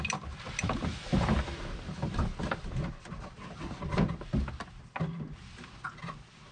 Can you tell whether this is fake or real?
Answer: real